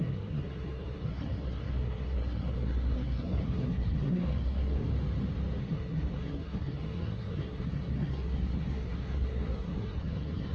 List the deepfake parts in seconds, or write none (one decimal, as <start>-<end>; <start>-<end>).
0.0-4.9; 5.6-10.5